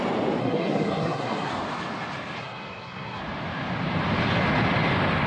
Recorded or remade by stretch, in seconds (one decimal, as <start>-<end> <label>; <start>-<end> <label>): 0.0-0.4 recorded; 0.4-1.5 remade; 1.5-2.4 recorded; 2.4-3.2 remade; 3.2-5.3 recorded